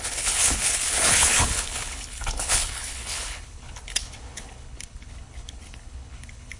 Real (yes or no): no